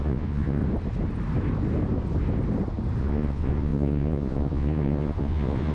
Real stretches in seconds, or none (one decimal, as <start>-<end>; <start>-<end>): 0.6-3.0